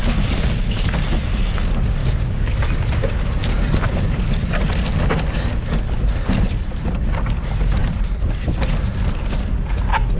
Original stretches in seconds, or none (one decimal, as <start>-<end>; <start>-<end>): 0.0-2.0; 2.5-10.2